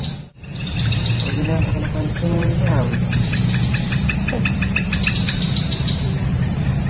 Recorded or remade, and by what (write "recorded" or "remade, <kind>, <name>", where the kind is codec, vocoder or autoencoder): remade, vocoder, BigVGAN v2